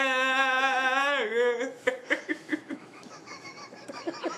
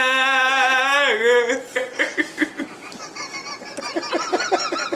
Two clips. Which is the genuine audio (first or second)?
second